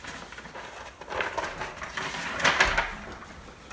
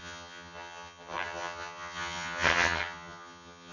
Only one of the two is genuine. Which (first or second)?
first